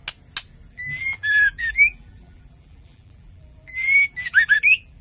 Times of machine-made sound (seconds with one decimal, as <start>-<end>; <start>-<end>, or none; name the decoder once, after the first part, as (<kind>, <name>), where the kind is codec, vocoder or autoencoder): 0.7-5.0 (vocoder, BigVGAN v2)